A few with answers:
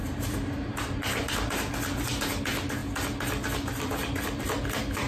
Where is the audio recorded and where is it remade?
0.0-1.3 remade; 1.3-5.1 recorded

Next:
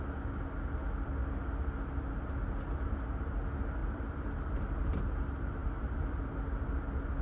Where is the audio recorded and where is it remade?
0.0-3.8 recorded; 3.8-5.1 remade; 5.1-5.6 recorded; 5.6-6.1 remade; 6.1-7.2 recorded

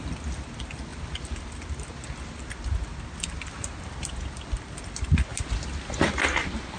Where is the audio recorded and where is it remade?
0.0-6.8 recorded